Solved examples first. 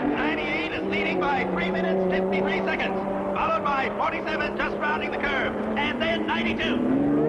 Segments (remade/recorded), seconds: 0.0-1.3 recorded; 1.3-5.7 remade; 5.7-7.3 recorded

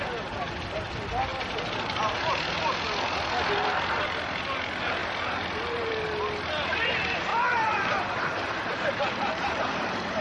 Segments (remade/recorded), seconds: 0.0-5.0 recorded; 5.0-5.9 remade; 5.9-7.3 recorded; 7.3-10.2 remade

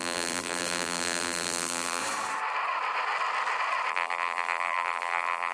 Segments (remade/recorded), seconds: 0.0-2.0 remade; 2.0-3.9 recorded; 3.9-5.5 remade

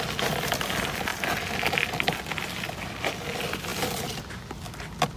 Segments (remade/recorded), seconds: 0.0-5.2 recorded